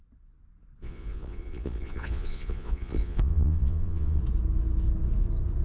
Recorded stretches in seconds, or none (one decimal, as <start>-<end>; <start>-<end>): 0.0-0.8; 4.2-5.6